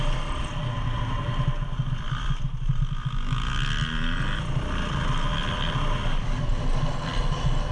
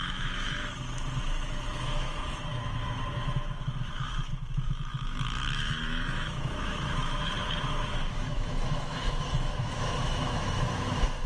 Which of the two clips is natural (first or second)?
first